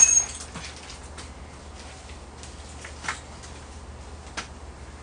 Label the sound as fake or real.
real